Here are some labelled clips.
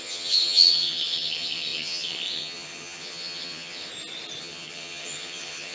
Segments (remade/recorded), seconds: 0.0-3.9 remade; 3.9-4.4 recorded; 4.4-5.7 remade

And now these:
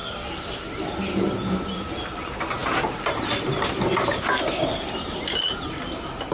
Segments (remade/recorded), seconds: 0.0-6.3 recorded

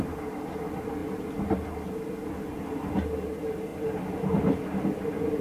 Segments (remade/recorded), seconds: 0.0-1.0 remade; 1.0-2.8 recorded; 2.8-5.4 remade

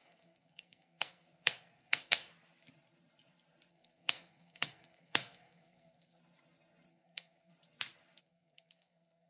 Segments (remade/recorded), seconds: 0.0-2.3 remade; 2.3-3.7 recorded; 3.7-6.2 remade; 6.2-6.9 recorded; 6.9-7.5 remade; 7.5-8.2 recorded; 8.2-9.3 remade

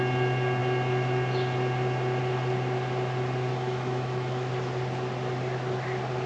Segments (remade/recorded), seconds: 0.0-3.5 recorded; 3.5-4.5 remade; 4.5-6.3 recorded

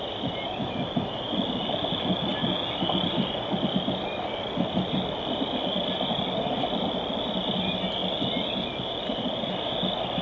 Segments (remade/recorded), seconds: 0.0-10.2 recorded

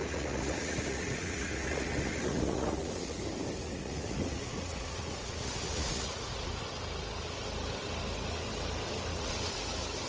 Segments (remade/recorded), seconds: 0.0-3.2 remade; 3.2-3.6 recorded; 3.6-6.5 remade; 6.5-9.1 recorded; 9.1-9.6 remade; 9.6-10.1 recorded